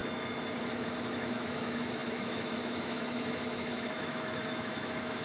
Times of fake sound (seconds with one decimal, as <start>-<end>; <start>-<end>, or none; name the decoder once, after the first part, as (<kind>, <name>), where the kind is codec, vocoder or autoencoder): 0.7-5.2 (autoencoder, DAC-VAE)

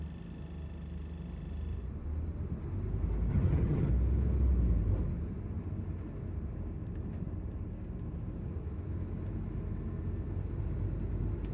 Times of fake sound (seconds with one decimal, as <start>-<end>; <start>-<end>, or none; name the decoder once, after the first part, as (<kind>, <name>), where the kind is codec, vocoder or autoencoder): 3.3-3.9 (vocoder, HiFi-GAN)